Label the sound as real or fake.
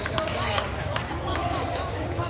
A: fake